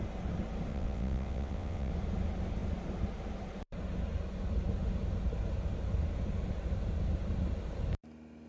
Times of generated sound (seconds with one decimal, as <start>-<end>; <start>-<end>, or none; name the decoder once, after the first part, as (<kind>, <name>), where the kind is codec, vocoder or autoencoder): 0.7-1.9 (vocoder, WaveNeXt)